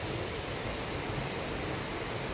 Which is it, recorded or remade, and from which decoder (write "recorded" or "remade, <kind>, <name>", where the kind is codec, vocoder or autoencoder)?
recorded